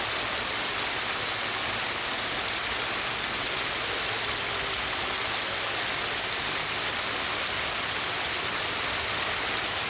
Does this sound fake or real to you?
real